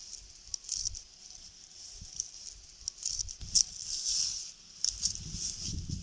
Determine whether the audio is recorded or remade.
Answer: recorded